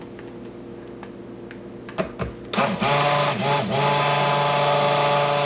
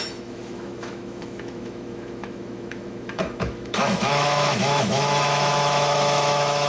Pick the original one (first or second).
first